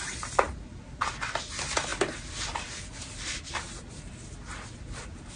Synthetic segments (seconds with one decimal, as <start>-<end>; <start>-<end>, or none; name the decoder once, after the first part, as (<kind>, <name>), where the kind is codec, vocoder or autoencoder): none